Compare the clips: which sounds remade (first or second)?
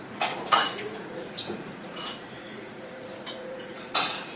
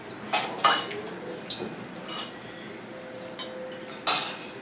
first